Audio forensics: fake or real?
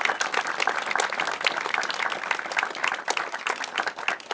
real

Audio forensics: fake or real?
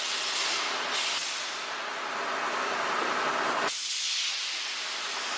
real